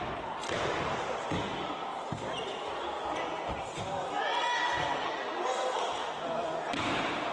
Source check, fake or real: real